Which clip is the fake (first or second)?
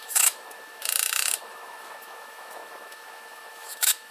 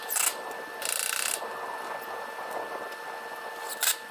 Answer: first